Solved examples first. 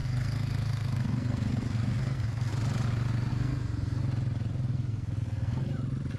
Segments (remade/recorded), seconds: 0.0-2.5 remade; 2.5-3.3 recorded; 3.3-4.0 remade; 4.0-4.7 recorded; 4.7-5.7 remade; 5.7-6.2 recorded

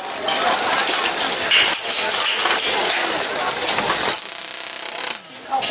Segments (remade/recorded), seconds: 0.0-5.7 recorded

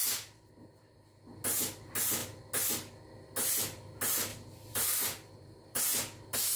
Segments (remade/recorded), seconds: 0.0-0.5 remade; 0.5-4.3 recorded; 4.3-5.8 remade; 5.8-6.6 recorded

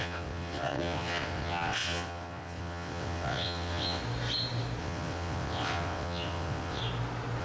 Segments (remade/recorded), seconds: 0.0-4.0 remade; 4.0-4.8 recorded; 4.8-6.8 remade; 6.8-7.4 recorded